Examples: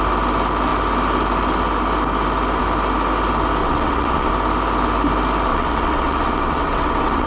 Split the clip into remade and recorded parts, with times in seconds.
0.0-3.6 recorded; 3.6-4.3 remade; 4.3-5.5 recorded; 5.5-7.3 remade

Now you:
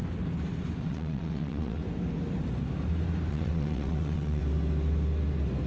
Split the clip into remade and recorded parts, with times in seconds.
0.0-0.8 recorded; 0.8-1.8 remade; 1.8-3.3 recorded; 3.3-4.4 remade; 4.4-5.7 recorded